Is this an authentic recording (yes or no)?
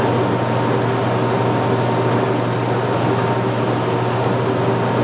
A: yes